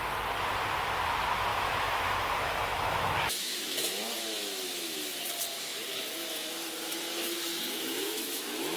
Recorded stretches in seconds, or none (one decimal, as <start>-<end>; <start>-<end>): 0.0-1.5; 5.2-5.7